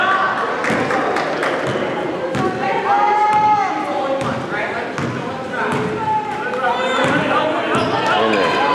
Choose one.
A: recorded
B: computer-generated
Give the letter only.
A